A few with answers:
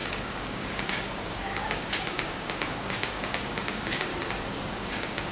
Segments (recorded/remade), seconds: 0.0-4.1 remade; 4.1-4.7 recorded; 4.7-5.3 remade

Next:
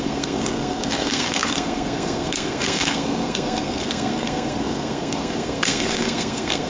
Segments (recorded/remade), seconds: 0.0-6.7 remade

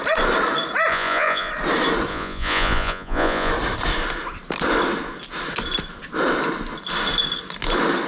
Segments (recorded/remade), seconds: 0.0-0.9 recorded; 0.9-1.5 remade; 1.5-2.1 recorded; 2.1-3.5 remade; 3.5-8.1 recorded

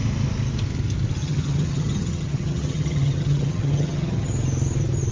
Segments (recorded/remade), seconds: 0.0-1.2 recorded; 1.2-4.3 remade; 4.3-5.1 recorded

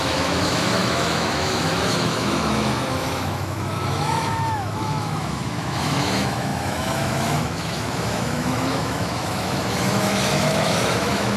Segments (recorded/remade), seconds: 0.0-11.4 remade